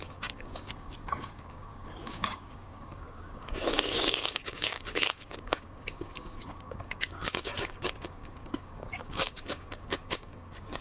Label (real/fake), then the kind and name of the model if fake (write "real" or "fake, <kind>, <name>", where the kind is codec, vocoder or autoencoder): fake, codec, DAC